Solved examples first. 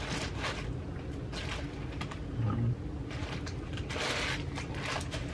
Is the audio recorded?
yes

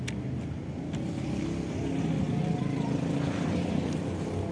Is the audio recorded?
yes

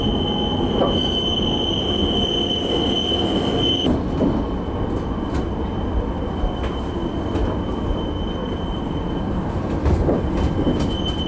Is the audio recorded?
yes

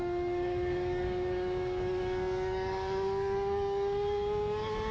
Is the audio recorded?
no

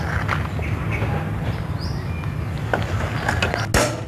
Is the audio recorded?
yes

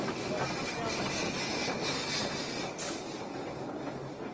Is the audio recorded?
yes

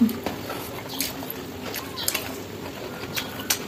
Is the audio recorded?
yes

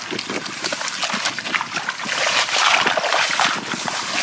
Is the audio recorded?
yes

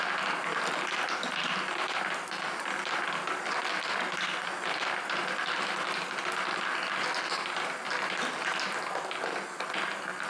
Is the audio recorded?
yes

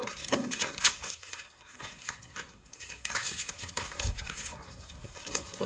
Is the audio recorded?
no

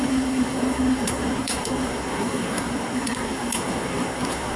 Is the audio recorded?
no